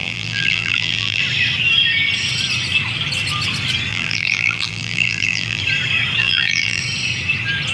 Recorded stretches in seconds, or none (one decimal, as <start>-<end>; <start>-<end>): 1.2-3.9; 5.6-6.2; 6.8-7.7